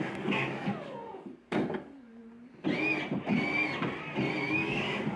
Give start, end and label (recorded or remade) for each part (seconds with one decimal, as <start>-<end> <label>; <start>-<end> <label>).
0.0-2.2 remade; 2.2-4.4 recorded; 4.4-5.2 remade

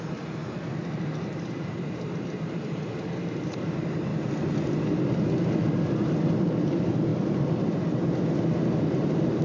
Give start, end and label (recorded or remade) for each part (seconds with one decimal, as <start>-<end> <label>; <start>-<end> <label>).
0.0-0.4 remade; 0.4-1.4 recorded; 1.4-4.1 remade; 4.1-6.2 recorded; 6.2-7.1 remade; 7.1-8.8 recorded; 8.8-9.4 remade

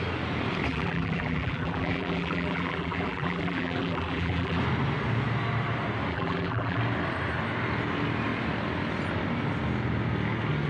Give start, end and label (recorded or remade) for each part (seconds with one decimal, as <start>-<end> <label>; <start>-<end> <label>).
0.0-0.7 recorded; 0.7-4.6 remade; 4.6-6.1 recorded; 6.1-6.8 remade; 6.8-10.7 recorded

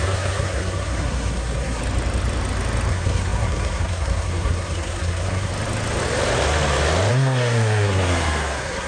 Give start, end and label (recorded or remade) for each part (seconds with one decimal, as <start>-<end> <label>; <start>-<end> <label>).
0.0-1.8 remade; 1.8-2.9 recorded; 2.9-5.5 remade; 5.5-7.1 recorded; 7.1-8.9 remade

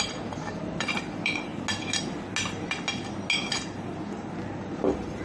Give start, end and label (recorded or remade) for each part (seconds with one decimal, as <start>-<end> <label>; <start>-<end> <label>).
0.0-1.5 remade; 1.5-4.6 recorded; 4.6-5.2 remade

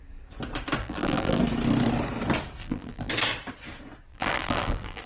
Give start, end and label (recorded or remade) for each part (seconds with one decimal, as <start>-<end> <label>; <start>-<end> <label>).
0.0-0.8 recorded; 0.8-1.4 remade; 1.4-2.6 recorded; 2.6-3.1 remade; 3.1-4.1 recorded; 4.1-5.1 remade

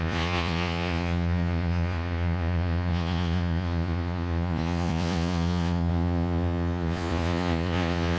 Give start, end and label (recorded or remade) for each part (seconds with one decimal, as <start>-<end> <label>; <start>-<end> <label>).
0.0-8.2 remade

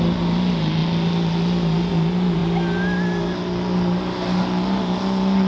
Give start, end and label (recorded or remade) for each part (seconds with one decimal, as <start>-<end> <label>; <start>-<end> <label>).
0.0-5.5 recorded